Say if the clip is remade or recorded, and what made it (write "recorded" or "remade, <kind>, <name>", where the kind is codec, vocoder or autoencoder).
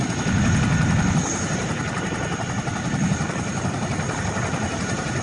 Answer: recorded